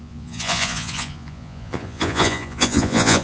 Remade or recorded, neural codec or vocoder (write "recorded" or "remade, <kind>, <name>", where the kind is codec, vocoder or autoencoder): remade, vocoder, Vocos